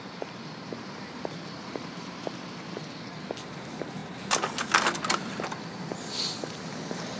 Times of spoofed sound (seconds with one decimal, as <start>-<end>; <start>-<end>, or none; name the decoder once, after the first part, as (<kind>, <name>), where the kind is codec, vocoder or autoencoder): none